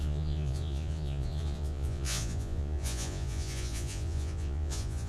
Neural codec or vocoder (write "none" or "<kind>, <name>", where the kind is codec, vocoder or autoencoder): vocoder, Vocos